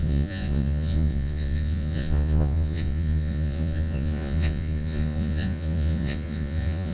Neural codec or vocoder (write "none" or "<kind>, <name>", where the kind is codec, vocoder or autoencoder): vocoder, Vocos